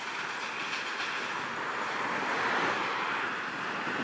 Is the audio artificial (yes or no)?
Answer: no